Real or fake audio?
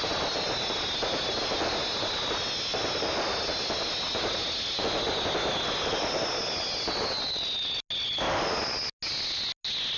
real